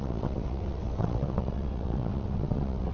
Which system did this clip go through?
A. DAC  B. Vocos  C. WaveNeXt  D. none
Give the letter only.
C